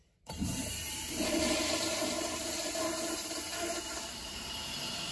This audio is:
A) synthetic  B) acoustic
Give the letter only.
A